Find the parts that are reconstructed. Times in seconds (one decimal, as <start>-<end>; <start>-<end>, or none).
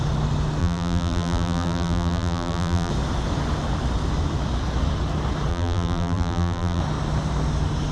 0.6-2.9; 5.5-6.8